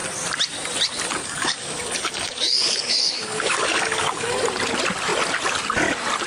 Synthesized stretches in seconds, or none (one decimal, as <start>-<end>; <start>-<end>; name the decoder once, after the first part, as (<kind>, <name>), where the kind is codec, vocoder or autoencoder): 1.2-4.4 (codec, DAC)